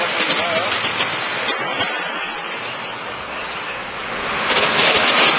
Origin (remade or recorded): recorded